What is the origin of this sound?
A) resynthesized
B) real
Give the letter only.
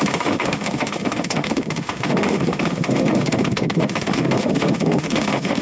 A